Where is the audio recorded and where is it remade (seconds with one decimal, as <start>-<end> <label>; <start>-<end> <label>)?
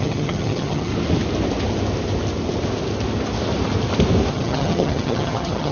0.0-0.9 remade; 0.9-4.3 recorded; 4.3-5.7 remade